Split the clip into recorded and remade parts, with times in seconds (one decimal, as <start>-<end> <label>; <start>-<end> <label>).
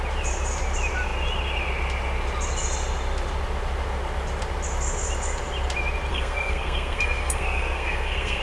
0.0-6.1 recorded; 6.1-8.4 remade